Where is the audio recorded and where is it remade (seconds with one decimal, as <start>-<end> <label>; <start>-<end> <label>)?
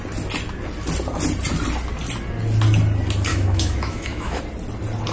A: 0.0-3.3 recorded; 3.3-4.4 remade; 4.4-5.1 recorded